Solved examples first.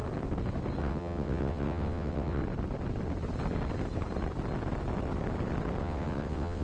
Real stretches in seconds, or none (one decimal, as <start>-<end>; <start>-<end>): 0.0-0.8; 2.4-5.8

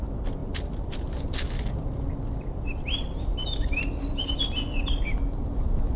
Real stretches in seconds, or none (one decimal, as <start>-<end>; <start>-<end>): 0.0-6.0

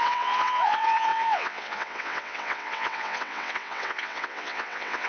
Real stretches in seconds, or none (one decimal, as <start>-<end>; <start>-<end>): none

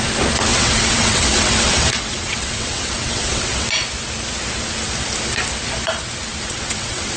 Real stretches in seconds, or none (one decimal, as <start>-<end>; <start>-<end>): 0.0-0.5; 3.7-6.5

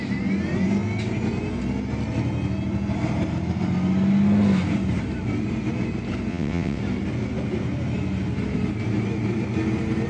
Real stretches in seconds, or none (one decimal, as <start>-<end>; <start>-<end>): 0.0-6.3; 6.8-10.1

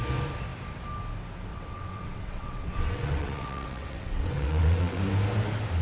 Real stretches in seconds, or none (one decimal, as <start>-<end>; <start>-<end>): 0.0-1.5; 5.0-5.8

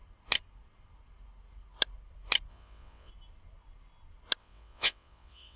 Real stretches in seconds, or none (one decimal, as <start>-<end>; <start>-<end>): 0.0-2.5; 3.1-4.4